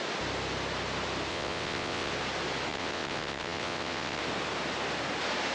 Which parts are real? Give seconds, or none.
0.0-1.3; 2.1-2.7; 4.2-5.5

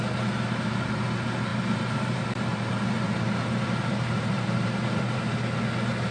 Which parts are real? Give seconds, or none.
0.0-1.5; 5.2-6.1

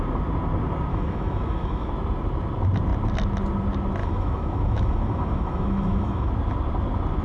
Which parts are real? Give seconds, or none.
0.0-0.9; 1.9-4.0; 6.3-7.2

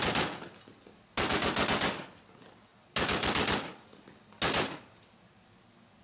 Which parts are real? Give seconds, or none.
0.0-6.0

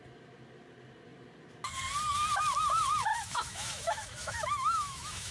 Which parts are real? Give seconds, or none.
0.0-3.1

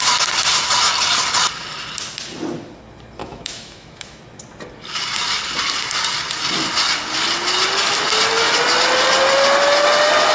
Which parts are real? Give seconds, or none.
0.0-3.2; 4.2-10.3

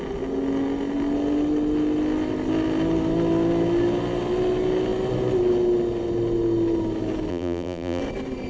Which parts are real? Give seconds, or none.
0.0-7.3; 8.0-8.5